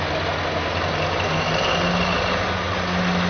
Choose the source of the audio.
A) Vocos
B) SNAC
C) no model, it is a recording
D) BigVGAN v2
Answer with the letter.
C